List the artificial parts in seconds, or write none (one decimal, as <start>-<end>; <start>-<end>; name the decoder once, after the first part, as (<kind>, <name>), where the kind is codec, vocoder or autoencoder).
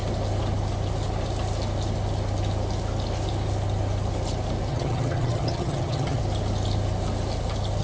4.7-6.2 (vocoder, HiFi-GAN)